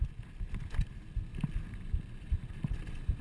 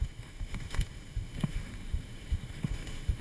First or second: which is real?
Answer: first